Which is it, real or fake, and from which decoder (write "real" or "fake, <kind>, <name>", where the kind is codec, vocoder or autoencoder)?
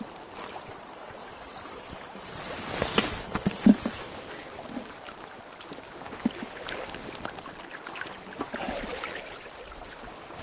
real